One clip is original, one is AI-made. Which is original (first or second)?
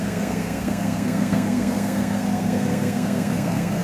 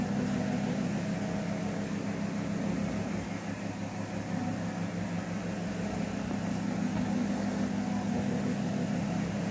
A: second